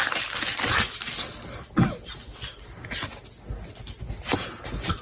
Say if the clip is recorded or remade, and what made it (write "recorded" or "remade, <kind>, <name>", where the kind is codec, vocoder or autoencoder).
recorded